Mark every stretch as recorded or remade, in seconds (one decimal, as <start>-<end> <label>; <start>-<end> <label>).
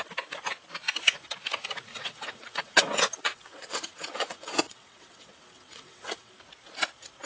0.0-1.9 recorded; 1.9-6.3 remade; 6.3-7.3 recorded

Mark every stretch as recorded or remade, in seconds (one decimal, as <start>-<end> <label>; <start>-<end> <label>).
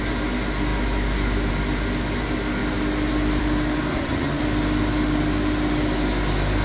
0.0-3.9 recorded; 3.9-4.4 remade; 4.4-6.6 recorded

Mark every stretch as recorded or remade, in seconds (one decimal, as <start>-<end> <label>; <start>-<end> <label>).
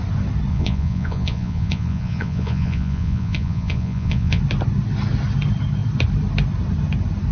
0.0-0.5 recorded; 0.5-4.4 remade; 4.4-7.3 recorded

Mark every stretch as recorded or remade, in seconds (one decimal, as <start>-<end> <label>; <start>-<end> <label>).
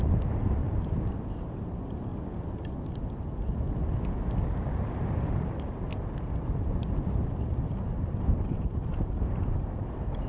0.0-0.6 remade; 0.6-1.3 recorded; 1.3-2.1 remade; 2.1-4.8 recorded; 4.8-5.9 remade; 5.9-8.4 recorded; 8.4-10.3 remade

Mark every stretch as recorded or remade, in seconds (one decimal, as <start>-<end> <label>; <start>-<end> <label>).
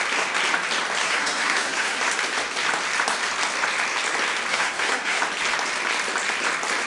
0.0-1.0 recorded; 1.0-2.0 remade; 2.0-4.5 recorded; 4.5-5.2 remade; 5.2-6.9 recorded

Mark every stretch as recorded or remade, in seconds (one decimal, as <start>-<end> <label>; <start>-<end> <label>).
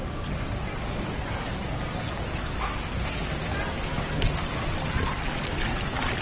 0.0-6.2 recorded